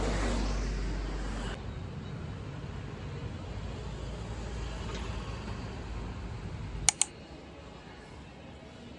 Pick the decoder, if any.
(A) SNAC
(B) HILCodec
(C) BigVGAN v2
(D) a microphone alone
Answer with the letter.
D